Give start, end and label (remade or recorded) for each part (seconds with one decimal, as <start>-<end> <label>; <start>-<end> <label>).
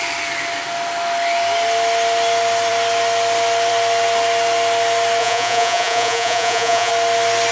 0.0-5.2 recorded; 5.2-6.9 remade; 6.9-7.5 recorded